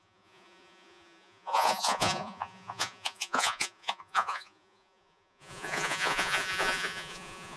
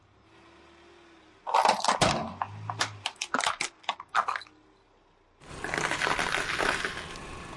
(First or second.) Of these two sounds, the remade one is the first